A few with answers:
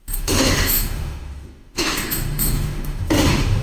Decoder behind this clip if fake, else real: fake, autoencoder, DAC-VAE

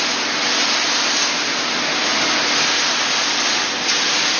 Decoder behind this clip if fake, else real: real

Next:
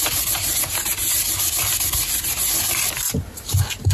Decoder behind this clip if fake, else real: real